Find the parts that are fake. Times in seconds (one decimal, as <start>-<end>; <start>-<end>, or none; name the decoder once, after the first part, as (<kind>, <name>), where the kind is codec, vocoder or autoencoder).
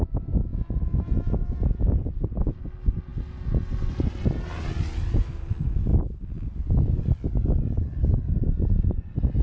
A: 0.5-2.0 (vocoder, Vocos)